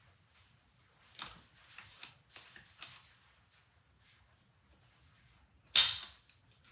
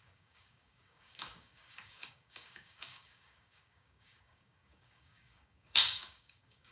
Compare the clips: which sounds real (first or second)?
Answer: first